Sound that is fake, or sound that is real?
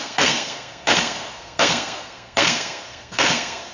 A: fake